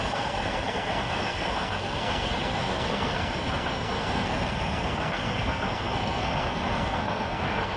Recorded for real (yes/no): no